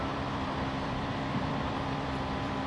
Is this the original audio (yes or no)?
no